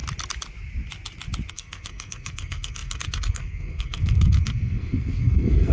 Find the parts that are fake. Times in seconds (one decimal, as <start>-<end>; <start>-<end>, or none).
1.5-5.7